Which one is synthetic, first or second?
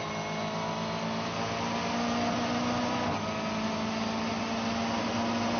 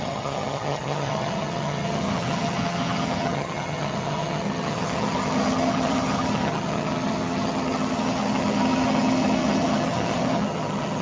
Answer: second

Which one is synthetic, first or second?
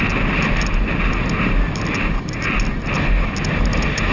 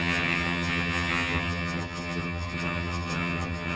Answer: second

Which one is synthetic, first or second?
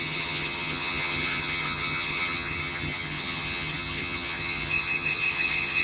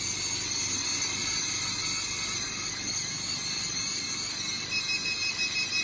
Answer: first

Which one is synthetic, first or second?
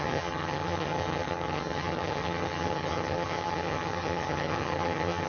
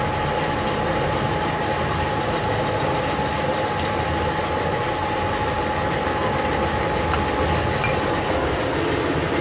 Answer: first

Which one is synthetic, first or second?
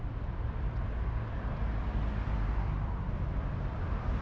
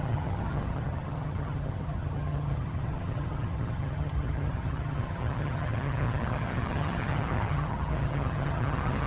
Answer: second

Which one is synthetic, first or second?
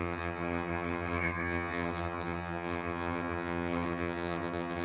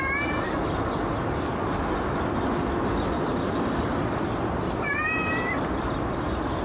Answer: first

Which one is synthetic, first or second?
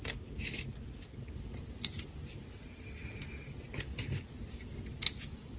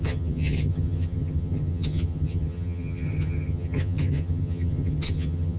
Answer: second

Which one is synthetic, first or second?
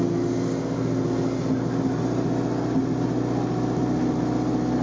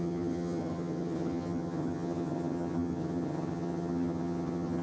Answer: second